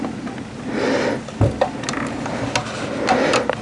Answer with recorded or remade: recorded